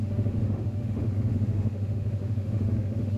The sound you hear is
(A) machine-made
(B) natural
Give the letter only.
A